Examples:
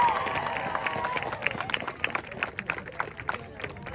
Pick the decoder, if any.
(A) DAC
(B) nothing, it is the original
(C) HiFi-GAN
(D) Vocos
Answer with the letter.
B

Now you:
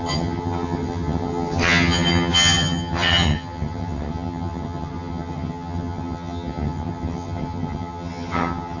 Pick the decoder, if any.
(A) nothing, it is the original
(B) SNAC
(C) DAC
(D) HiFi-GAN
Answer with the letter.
D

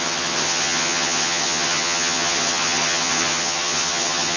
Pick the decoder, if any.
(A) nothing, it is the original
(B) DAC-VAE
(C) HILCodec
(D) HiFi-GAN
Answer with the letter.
D